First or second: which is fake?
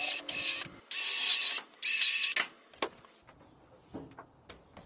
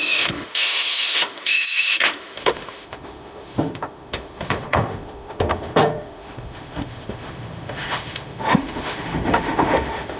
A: second